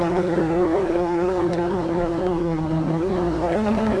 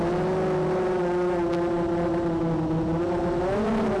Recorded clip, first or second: second